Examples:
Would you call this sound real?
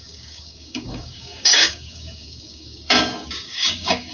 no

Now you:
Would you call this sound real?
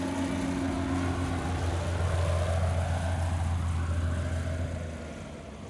yes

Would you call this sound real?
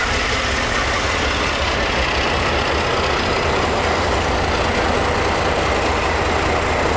yes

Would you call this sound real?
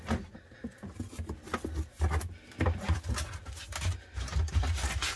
yes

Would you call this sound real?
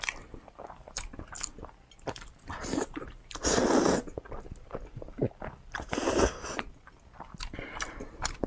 no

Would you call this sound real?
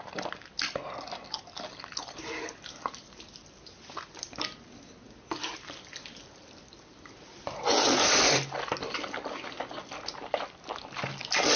yes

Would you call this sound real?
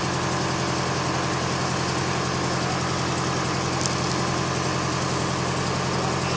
yes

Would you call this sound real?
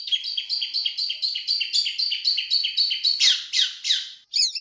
yes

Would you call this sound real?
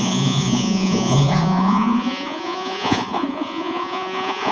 no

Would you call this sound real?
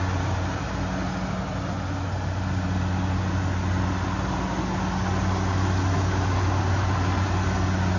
yes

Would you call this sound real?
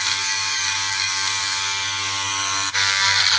no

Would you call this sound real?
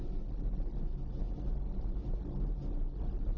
yes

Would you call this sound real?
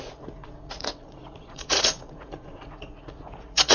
no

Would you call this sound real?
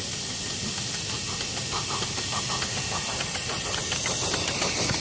yes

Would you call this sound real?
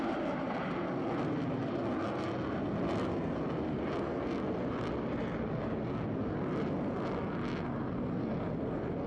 yes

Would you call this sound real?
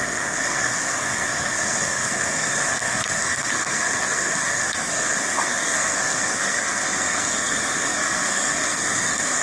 no